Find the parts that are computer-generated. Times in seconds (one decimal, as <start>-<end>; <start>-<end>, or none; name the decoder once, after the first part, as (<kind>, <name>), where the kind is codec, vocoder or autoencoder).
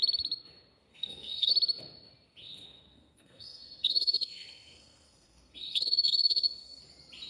0.9-1.5 (codec, SNAC); 2.4-6.8